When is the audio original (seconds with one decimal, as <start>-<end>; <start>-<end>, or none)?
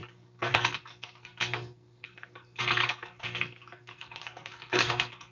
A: none